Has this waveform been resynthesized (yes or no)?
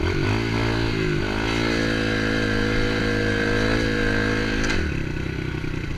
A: no